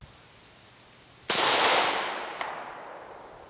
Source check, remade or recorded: recorded